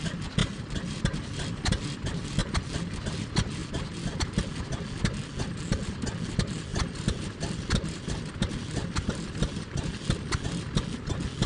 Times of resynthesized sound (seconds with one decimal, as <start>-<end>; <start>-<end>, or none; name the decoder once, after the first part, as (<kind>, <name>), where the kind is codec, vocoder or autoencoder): 0.4-1.0 (vocoder, BigVGAN v2); 2.4-3.0; 6.7-10.8

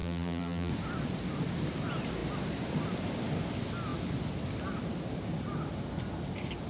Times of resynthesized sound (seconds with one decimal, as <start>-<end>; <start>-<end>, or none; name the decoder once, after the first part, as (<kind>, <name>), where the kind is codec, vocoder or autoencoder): 0.0-0.7 (vocoder, BigVGAN v2)

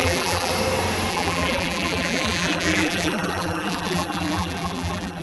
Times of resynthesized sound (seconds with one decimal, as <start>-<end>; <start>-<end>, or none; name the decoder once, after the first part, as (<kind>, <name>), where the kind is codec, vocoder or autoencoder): 0.0-0.5 (vocoder, BigVGAN v2); 1.1-5.2

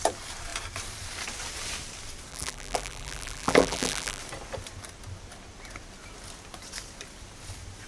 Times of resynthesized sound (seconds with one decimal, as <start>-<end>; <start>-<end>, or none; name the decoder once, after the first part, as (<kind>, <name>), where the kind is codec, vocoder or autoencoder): 2.3-4.2 (vocoder, BigVGAN v2)

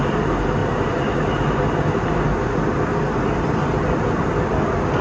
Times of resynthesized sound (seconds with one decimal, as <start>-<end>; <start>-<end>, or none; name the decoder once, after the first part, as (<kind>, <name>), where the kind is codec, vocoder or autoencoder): 0.6-1.6 (vocoder, BigVGAN v2)

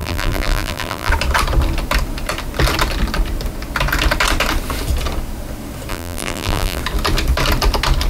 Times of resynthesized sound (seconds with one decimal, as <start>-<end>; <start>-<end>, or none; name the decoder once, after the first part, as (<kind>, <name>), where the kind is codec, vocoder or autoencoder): 0.0-1.1 (vocoder, BigVGAN v2); 5.9-6.8

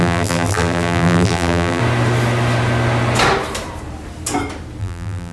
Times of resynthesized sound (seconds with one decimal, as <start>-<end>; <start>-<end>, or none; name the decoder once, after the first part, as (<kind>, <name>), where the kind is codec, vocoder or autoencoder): 0.0-1.8 (vocoder, BigVGAN v2); 4.8-5.3